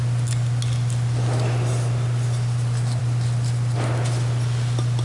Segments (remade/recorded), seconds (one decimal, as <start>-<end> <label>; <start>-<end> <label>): 0.0-5.0 recorded